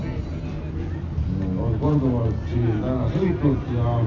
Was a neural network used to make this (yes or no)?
no